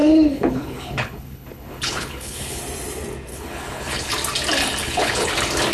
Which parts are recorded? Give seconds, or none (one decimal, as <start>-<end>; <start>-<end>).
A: 2.6-3.3; 4.1-4.8; 5.3-5.7